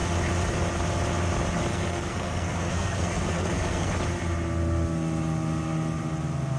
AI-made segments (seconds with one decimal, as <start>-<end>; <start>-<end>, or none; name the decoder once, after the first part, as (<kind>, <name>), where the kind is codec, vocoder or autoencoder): 1.7-3.9 (codec, SNAC)